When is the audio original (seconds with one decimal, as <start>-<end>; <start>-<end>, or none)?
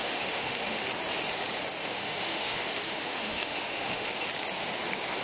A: 0.8-1.8; 4.1-5.2